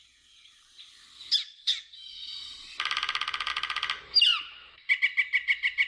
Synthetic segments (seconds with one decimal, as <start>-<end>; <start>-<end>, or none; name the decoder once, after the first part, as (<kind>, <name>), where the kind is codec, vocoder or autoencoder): none